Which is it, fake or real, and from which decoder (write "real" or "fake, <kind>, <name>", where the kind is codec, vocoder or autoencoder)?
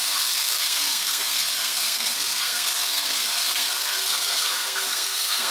fake, codec, SNAC